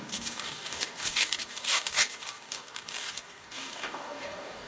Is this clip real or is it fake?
fake